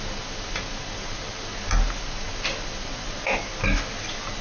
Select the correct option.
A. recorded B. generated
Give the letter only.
A